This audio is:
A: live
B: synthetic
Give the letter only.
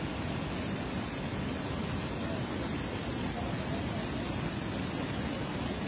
A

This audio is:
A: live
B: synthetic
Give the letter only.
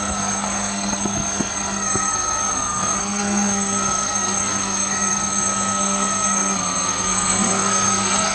B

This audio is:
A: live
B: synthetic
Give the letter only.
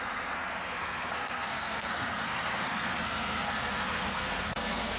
B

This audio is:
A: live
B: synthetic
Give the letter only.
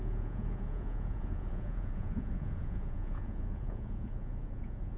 B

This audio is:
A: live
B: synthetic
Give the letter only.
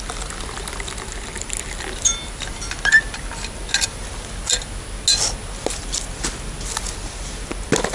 A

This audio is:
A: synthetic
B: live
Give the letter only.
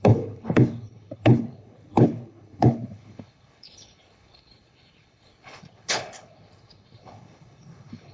A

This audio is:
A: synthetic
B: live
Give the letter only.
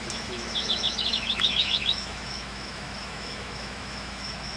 A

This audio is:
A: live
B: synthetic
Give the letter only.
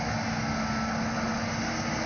A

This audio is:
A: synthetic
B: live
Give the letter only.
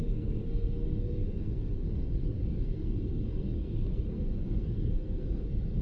A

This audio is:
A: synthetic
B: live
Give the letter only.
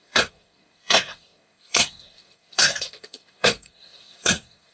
A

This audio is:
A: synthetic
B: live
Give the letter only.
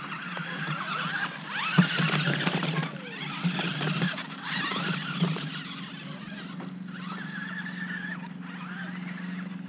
B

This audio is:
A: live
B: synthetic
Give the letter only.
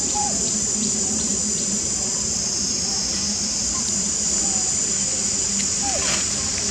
B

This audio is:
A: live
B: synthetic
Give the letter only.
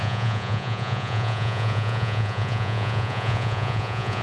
B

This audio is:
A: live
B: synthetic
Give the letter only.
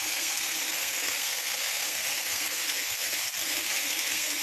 B